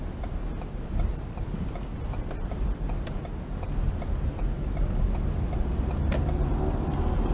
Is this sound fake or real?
real